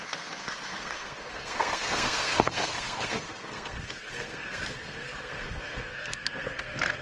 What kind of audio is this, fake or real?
fake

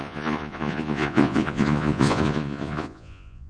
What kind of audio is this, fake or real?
fake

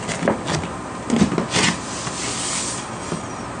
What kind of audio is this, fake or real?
real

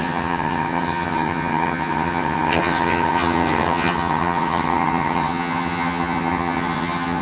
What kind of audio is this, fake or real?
fake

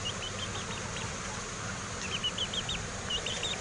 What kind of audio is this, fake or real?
real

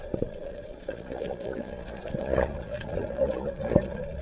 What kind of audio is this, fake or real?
fake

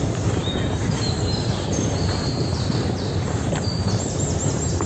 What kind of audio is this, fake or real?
fake